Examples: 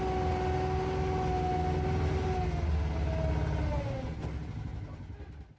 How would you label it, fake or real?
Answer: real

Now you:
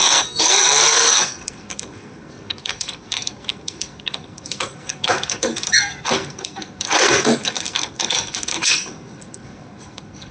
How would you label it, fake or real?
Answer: fake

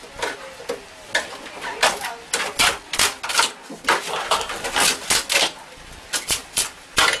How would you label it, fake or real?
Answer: real